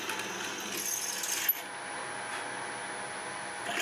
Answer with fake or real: real